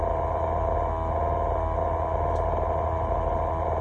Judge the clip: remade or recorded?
recorded